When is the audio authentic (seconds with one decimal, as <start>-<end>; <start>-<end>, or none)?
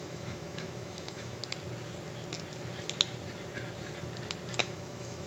1.4-4.6